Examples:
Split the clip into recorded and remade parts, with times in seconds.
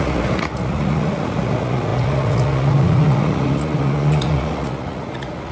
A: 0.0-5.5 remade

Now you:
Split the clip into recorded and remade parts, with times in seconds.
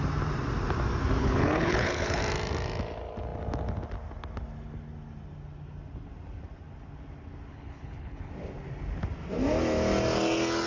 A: 0.0-1.2 recorded; 1.2-2.2 remade; 2.2-7.5 recorded; 7.5-8.3 remade; 8.3-10.7 recorded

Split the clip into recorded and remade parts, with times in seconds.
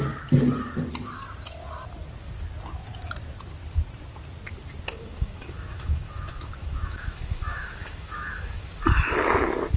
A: 0.0-4.9 recorded; 4.9-8.7 remade; 8.7-9.8 recorded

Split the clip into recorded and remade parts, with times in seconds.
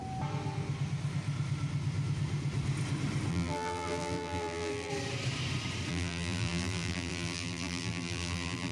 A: 0.0-3.3 recorded; 3.3-4.9 remade; 4.9-5.9 recorded; 5.9-8.7 remade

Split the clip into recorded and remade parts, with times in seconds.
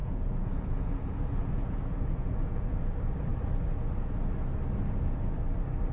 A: 0.0-2.8 remade; 2.8-5.9 recorded